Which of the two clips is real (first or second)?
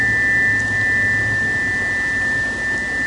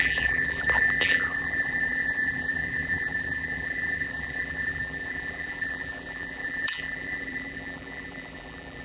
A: first